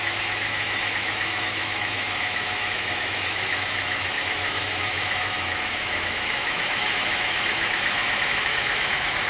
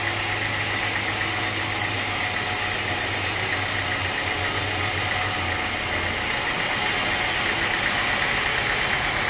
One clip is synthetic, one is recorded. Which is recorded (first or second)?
second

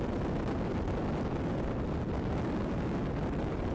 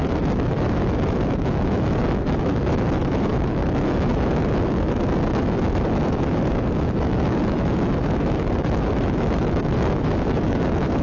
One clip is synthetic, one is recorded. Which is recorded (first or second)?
first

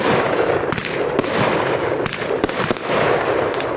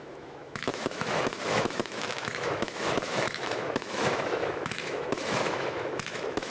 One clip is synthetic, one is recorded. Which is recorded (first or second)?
first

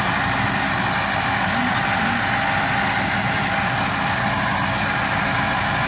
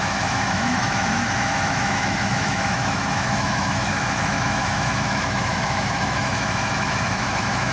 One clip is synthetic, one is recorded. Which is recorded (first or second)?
first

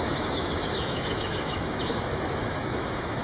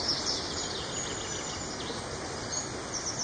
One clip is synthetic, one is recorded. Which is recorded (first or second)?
second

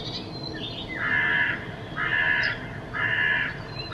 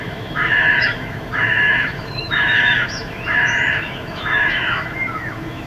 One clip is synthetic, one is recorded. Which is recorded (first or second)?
first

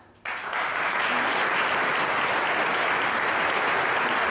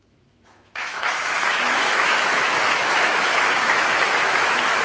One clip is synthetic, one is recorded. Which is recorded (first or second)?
first